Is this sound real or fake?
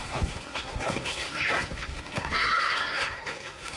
fake